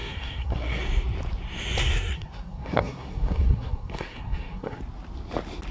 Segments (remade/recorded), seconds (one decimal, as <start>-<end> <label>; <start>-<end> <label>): 0.0-0.8 remade; 0.8-1.8 recorded; 1.8-4.8 remade; 4.8-5.7 recorded

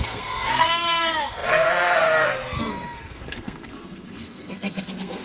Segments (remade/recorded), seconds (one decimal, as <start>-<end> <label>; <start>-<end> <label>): 0.0-5.2 remade

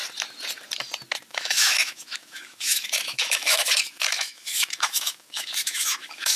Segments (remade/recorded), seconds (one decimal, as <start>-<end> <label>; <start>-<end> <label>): 0.0-1.3 recorded; 1.3-6.4 remade

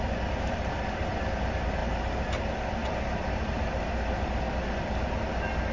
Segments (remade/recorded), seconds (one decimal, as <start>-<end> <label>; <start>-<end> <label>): 0.0-1.8 recorded; 1.8-2.4 remade; 2.4-2.8 recorded; 2.8-3.9 remade; 3.9-5.7 recorded

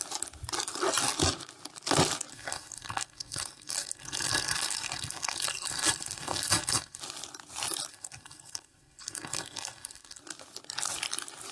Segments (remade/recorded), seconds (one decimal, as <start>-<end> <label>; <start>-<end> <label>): 0.0-2.3 recorded; 2.3-7.0 remade; 7.0-7.9 recorded; 7.9-10.2 remade; 10.2-11.5 recorded

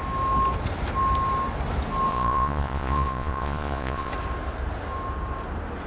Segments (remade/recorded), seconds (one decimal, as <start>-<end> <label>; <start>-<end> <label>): 0.0-2.1 recorded; 2.1-4.1 remade; 4.1-5.9 recorded

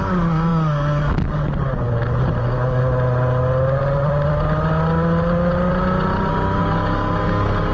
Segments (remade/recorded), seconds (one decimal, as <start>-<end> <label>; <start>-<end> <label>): 0.0-1.5 remade; 1.5-2.4 recorded; 2.4-2.8 remade; 2.8-6.6 recorded; 6.6-7.7 remade